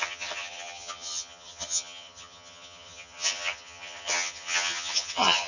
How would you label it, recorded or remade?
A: remade